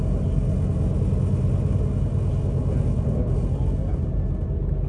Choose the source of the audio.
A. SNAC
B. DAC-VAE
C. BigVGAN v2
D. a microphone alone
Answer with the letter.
D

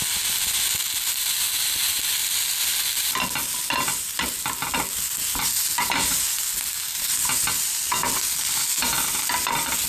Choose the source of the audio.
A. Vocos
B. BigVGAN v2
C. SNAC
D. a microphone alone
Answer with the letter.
D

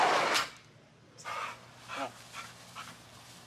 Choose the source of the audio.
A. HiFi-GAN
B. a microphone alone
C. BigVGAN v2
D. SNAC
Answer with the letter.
B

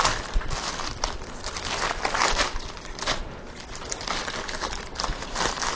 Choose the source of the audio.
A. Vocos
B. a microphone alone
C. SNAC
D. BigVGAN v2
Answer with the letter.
D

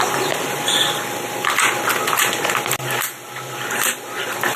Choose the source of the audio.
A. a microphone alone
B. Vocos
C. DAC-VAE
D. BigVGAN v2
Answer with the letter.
A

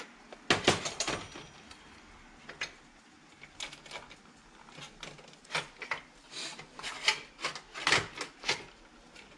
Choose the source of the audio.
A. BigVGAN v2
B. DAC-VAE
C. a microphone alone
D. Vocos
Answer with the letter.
C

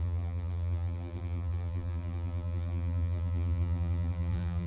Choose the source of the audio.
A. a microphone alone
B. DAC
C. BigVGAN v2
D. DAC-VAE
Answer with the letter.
C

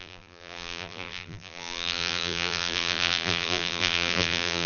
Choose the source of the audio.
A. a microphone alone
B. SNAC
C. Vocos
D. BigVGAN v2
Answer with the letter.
D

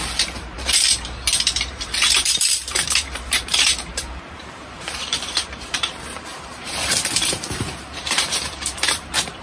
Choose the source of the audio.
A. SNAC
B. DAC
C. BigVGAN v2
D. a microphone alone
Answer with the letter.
C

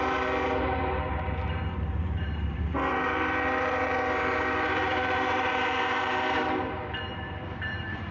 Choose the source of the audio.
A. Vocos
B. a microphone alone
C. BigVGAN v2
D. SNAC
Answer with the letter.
C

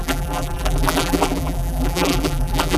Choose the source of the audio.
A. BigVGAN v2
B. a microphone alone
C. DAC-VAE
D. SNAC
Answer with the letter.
A